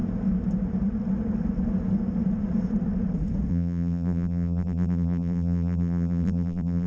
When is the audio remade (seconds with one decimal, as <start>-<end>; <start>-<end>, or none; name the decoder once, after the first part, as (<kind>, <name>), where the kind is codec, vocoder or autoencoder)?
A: 3.5-6.9 (vocoder, BigVGAN v2)